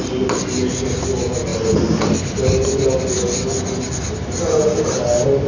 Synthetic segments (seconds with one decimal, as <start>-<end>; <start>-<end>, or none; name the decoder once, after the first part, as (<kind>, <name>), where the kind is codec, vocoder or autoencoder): none